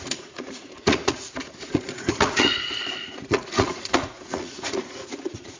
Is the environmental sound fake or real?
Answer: fake